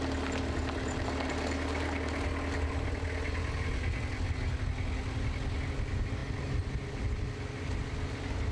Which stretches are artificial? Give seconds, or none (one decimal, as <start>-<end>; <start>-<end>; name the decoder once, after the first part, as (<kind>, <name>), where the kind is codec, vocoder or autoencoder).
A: none